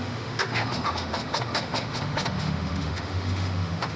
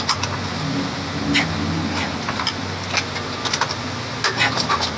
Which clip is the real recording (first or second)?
second